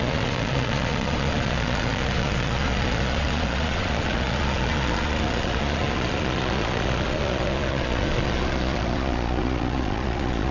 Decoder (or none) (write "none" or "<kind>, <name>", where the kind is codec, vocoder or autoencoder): vocoder, Vocos